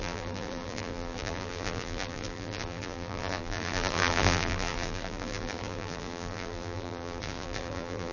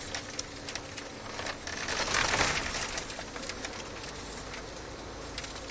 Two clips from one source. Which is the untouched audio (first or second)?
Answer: second